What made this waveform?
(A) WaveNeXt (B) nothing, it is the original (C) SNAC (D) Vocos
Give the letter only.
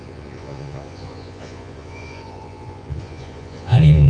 D